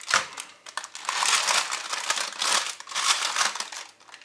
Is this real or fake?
real